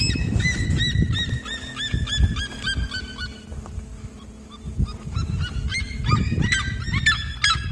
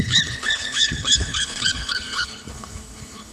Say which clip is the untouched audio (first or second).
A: first